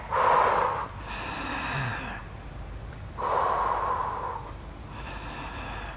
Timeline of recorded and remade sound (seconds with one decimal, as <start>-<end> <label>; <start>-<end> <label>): 0.0-6.0 recorded